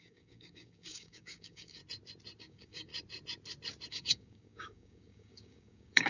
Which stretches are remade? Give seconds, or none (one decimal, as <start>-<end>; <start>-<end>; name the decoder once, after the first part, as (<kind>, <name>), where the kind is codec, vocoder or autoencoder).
0.0-1.8 (codec, DAC); 2.4-2.9; 3.9-6.1